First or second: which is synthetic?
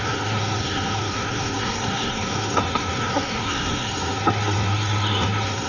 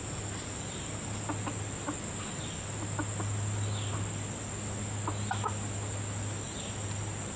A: first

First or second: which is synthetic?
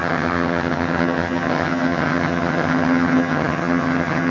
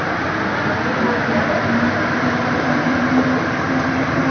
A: first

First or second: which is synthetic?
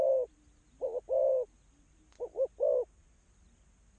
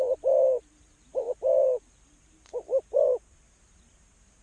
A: second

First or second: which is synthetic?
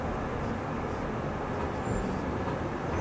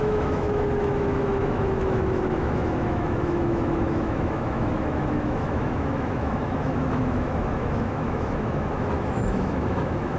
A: second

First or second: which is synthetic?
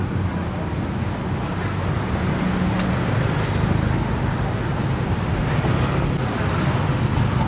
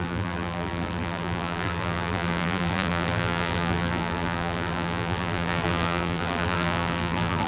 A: second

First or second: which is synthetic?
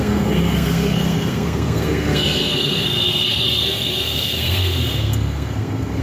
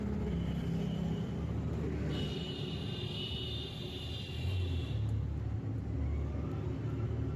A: first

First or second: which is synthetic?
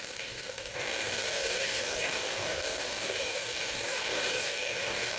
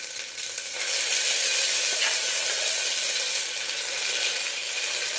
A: first